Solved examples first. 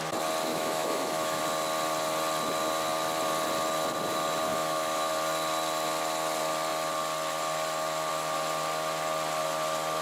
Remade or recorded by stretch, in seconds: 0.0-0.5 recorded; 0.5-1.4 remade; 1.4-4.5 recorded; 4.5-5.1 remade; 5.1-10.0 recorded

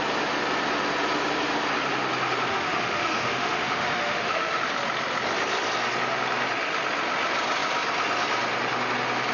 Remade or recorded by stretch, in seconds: 0.0-2.5 recorded; 2.5-4.6 remade; 4.6-9.3 recorded

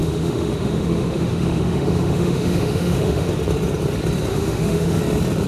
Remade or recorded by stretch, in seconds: 0.0-3.3 remade; 3.3-4.3 recorded; 4.3-5.0 remade; 5.0-5.5 recorded

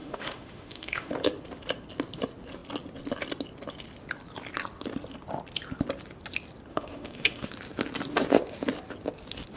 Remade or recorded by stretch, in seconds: 0.0-1.1 remade; 1.1-6.7 recorded; 6.7-7.5 remade; 7.5-9.6 recorded

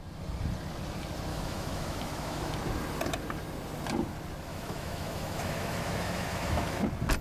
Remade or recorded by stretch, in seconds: 0.0-1.3 recorded; 1.3-2.5 remade; 2.5-4.5 recorded; 4.5-6.8 remade; 6.8-7.2 recorded

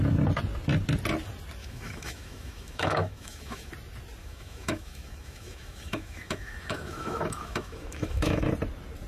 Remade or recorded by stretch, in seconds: 0.0-1.6 recorded; 1.6-3.7 remade; 3.7-4.2 recorded; 4.2-8.4 remade; 8.4-9.1 recorded

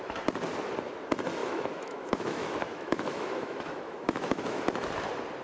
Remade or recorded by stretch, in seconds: 0.0-1.4 recorded; 1.4-4.6 remade; 4.6-5.4 recorded

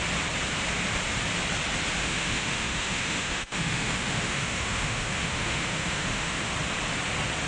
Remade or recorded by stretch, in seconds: 0.0-2.0 recorded; 2.0-6.5 remade; 6.5-7.5 recorded